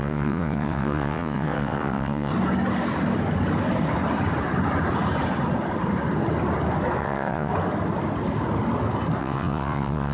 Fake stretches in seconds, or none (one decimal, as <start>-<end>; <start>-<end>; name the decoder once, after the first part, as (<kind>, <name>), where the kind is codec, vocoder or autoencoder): 0.0-2.3 (vocoder, WaveNeXt); 7.0-7.5; 9.2-10.1